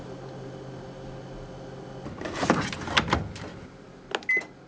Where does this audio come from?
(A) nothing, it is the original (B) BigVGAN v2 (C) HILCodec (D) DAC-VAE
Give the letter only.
A